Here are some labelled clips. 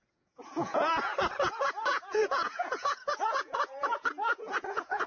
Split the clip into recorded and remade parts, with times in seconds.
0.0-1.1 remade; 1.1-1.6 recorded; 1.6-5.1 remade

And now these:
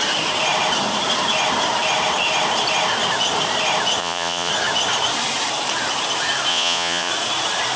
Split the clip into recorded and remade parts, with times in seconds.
0.0-4.0 recorded; 4.0-4.5 remade; 4.5-6.5 recorded; 6.5-7.1 remade; 7.1-7.8 recorded

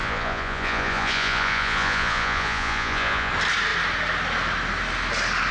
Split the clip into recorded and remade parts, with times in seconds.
0.0-3.3 remade; 3.3-5.5 recorded

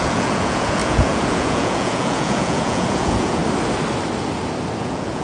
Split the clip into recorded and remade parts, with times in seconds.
0.0-3.4 remade; 3.4-4.8 recorded; 4.8-5.2 remade

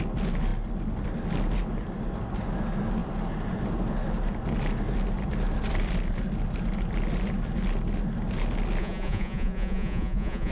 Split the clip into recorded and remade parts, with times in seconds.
0.0-8.8 recorded; 8.8-10.5 remade